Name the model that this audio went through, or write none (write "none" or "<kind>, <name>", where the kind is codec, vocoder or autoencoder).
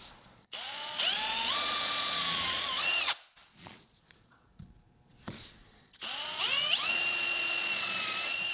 vocoder, Vocos